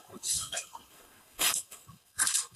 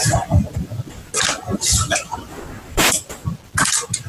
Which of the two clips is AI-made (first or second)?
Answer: first